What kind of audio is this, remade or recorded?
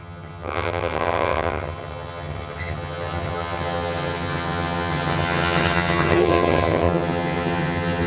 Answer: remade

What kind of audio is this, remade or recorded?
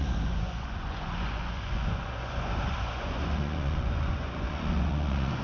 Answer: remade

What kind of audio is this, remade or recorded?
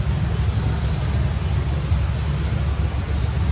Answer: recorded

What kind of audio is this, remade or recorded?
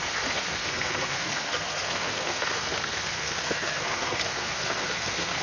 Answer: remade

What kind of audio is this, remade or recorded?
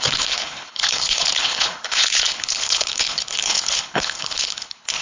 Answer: remade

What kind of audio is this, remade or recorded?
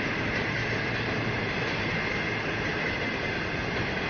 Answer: recorded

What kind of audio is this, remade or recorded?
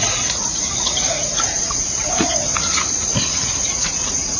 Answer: remade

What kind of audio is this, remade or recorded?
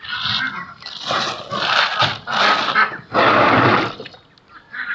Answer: recorded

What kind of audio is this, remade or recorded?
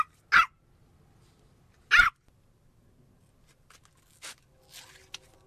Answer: recorded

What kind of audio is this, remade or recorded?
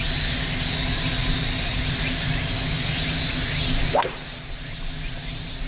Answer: recorded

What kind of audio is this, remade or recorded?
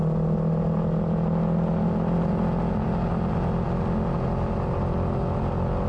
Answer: recorded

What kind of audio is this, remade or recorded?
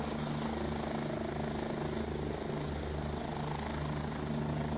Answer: recorded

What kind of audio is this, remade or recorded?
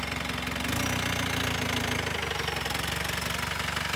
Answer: recorded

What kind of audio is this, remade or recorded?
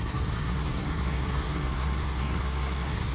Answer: remade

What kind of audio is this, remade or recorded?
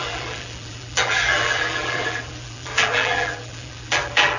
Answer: remade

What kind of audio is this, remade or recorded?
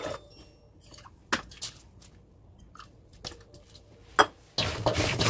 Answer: recorded